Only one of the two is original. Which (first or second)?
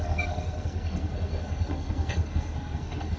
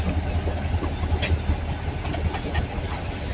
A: second